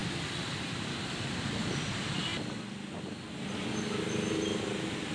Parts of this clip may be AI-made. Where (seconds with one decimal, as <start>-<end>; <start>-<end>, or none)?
0.0-1.4